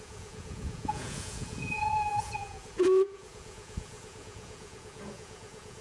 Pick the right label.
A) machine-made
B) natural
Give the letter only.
A